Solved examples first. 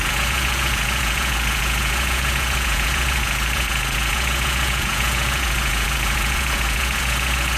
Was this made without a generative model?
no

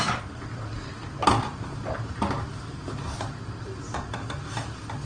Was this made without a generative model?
yes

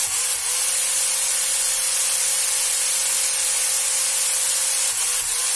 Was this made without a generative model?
yes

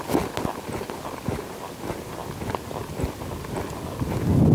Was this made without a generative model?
yes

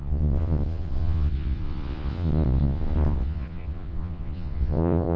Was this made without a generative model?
no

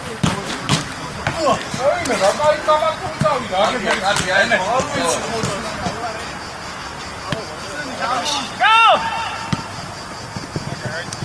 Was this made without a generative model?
yes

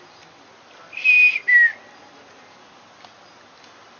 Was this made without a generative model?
yes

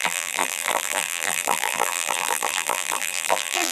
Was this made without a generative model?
no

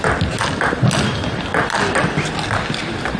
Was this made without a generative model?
yes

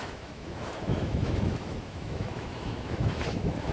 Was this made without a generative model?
no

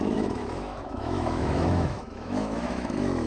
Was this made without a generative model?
no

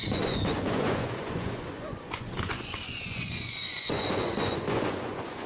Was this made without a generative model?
no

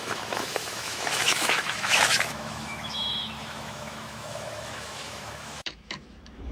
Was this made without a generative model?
no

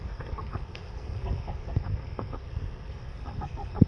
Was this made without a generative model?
no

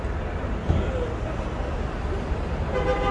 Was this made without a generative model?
yes